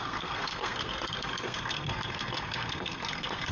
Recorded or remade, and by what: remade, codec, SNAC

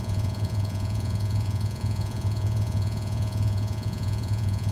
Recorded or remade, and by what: remade, vocoder, Vocos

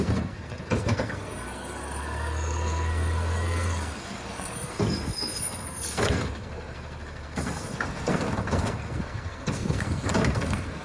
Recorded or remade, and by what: remade, codec, SNAC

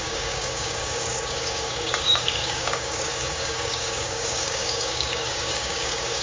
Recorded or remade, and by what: remade, codec, DAC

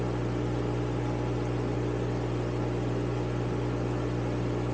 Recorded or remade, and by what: recorded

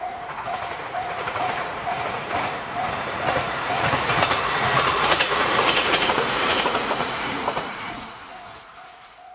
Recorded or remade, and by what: remade, vocoder, Vocos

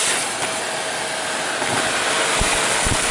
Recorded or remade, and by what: recorded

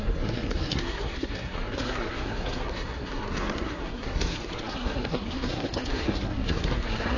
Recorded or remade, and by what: remade, codec, SNAC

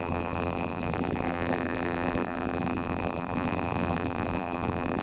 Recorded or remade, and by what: remade, vocoder, BigVGAN v2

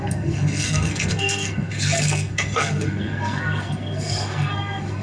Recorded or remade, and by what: remade, codec, SNAC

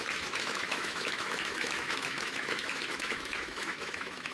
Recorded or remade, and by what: remade, autoencoder, DAC-VAE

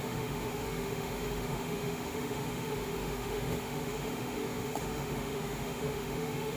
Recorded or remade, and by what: remade, autoencoder, DAC-VAE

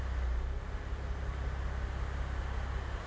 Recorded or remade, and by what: recorded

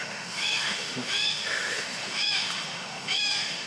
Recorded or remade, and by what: remade, autoencoder, DAC-VAE